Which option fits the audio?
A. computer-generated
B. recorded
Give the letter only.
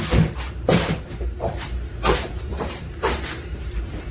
A